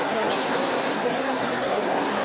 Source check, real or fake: fake